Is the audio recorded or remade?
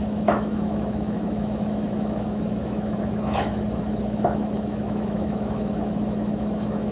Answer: remade